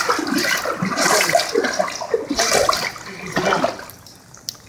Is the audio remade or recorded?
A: recorded